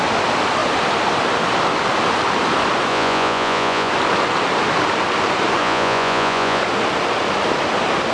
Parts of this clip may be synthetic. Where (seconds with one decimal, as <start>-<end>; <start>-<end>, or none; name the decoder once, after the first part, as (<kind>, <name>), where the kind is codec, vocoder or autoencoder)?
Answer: 2.9-3.9 (vocoder, Vocos); 5.6-6.6